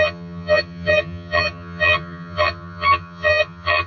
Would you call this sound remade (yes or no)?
yes